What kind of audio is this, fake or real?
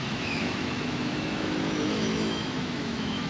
fake